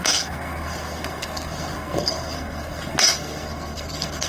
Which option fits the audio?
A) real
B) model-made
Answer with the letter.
B